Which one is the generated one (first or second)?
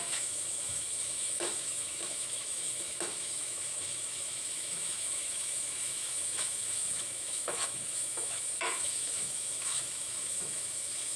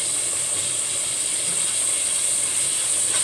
first